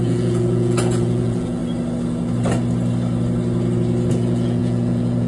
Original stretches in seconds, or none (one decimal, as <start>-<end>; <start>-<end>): 1.6-4.1